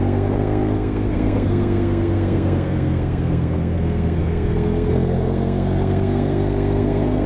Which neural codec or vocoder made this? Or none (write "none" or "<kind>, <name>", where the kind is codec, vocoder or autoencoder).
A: codec, SNAC